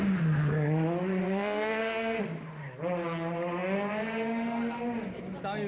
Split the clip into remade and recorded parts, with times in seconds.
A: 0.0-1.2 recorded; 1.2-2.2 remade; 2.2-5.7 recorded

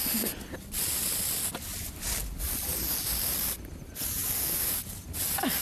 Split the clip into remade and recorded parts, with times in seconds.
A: 0.0-5.6 recorded

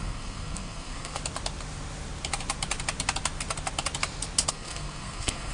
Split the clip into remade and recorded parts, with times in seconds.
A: 0.0-1.2 remade; 1.2-4.5 recorded; 4.5-5.5 remade

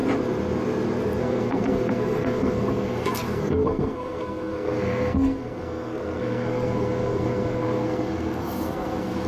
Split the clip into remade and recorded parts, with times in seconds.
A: 0.0-1.2 recorded; 1.2-9.3 remade

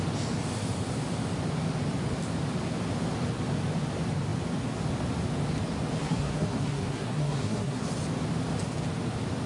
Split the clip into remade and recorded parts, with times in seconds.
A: 0.0-6.0 recorded; 6.0-7.9 remade; 7.9-9.5 recorded